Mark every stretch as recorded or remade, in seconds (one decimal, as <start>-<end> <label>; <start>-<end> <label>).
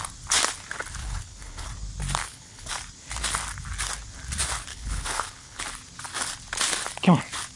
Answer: 0.0-1.0 recorded; 1.0-1.7 remade; 1.7-2.2 recorded; 2.2-2.7 remade; 2.7-4.7 recorded; 4.7-5.6 remade; 5.6-7.6 recorded